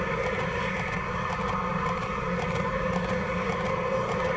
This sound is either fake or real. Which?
real